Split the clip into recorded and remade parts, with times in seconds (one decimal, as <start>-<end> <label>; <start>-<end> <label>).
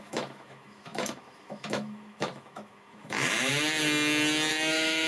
0.0-3.5 remade; 3.5-4.5 recorded; 4.5-5.1 remade